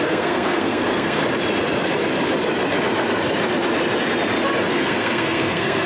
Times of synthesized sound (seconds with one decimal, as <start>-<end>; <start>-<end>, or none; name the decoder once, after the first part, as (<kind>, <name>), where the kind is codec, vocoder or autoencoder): 0.0-1.2 (codec, SNAC); 4.7-5.9